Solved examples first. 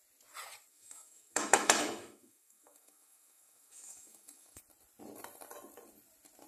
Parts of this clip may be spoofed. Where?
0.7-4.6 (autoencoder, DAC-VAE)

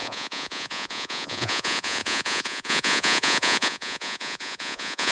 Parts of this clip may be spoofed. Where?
0.0-5.1 (vocoder, Vocos)

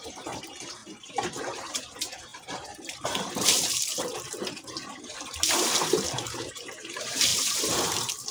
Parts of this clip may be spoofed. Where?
0.0-8.3 (vocoder, BigVGAN v2)

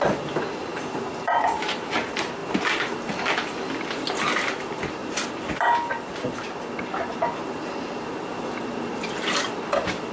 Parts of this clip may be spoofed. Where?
none

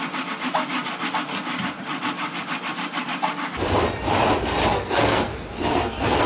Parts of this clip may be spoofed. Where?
4.6-6.3 (codec, SNAC)

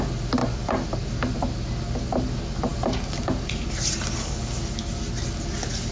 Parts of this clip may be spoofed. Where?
none